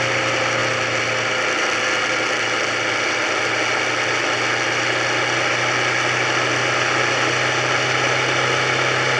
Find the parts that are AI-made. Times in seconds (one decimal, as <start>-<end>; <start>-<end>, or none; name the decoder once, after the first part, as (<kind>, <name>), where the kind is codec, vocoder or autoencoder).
none